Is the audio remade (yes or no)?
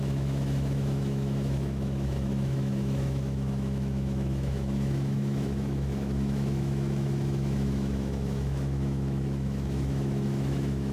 yes